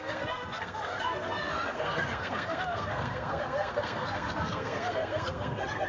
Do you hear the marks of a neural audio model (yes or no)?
yes